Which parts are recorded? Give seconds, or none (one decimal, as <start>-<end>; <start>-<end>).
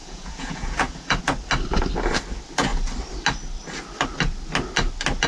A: 1.2-5.3